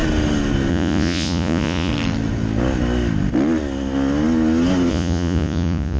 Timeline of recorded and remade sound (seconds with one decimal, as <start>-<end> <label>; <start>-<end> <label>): 0.0-0.7 recorded; 0.7-1.9 remade; 1.9-4.9 recorded; 4.9-6.0 remade